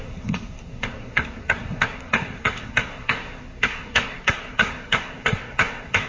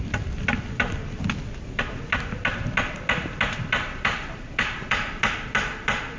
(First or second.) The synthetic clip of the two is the first